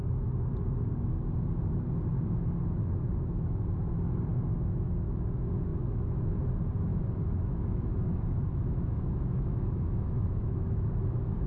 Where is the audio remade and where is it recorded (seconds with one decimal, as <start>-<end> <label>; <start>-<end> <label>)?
0.0-5.7 recorded; 5.7-6.2 remade; 6.2-6.9 recorded; 6.9-11.5 remade